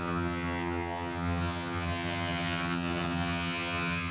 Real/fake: fake